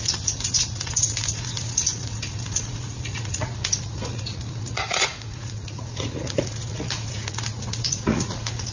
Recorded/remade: remade